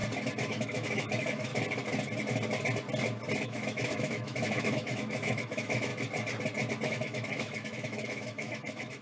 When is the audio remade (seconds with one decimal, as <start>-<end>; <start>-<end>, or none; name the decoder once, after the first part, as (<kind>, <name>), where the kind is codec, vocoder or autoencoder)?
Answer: 0.5-1.5 (autoencoder, DAC-VAE); 3.4-5.9; 6.9-9.0